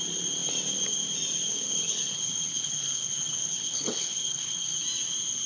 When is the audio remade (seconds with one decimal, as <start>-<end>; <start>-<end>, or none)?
1.5-4.8